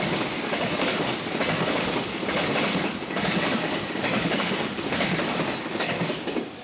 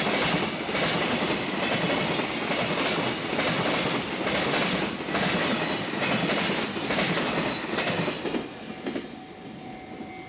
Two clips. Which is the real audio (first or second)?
second